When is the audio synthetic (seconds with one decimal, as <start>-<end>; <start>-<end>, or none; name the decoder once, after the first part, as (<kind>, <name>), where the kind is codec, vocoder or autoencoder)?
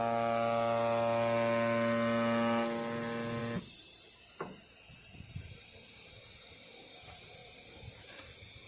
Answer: none